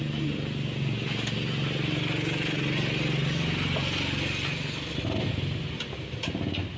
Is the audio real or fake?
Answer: real